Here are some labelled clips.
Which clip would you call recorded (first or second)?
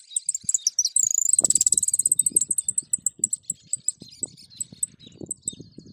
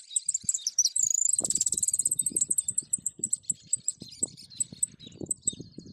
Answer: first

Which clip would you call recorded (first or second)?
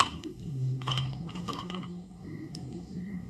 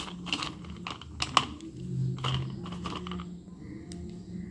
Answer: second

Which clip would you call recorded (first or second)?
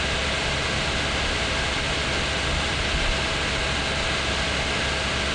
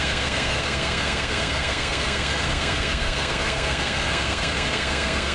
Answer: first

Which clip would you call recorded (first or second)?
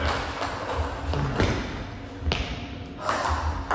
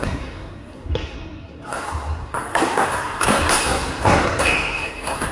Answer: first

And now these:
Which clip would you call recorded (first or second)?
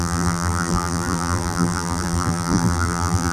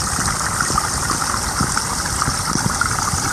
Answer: second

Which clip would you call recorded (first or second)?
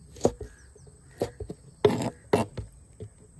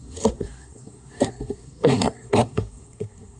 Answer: first